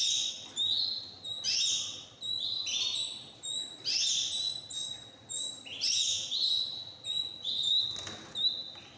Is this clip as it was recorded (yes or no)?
yes